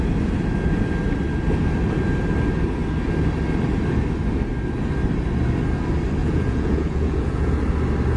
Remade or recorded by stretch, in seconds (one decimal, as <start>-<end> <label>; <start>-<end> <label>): 0.0-6.2 recorded; 6.2-7.5 remade; 7.5-8.2 recorded